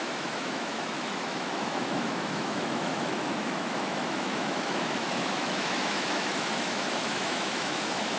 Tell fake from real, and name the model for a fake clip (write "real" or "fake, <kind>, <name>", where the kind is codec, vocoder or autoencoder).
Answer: fake, autoencoder, DAC-VAE